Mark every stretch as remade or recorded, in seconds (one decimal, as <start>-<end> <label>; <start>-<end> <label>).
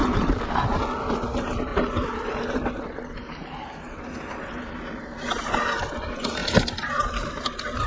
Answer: 0.0-1.0 recorded; 1.0-1.7 remade; 1.7-5.5 recorded; 5.5-6.4 remade; 6.4-7.0 recorded; 7.0-7.9 remade